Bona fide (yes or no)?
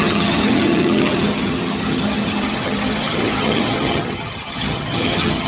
no